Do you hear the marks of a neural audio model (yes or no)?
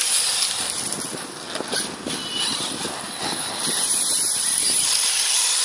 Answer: no